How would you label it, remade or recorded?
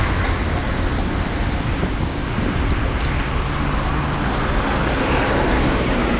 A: recorded